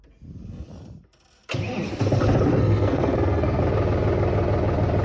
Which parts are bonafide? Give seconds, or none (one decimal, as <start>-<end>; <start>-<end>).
0.0-2.5; 3.6-5.0